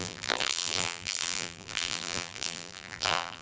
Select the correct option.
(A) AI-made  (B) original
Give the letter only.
A